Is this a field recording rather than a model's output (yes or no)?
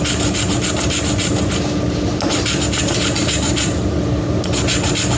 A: yes